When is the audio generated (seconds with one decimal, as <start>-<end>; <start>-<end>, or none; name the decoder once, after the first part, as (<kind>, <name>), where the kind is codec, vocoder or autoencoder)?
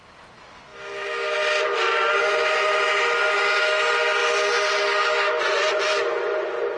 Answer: none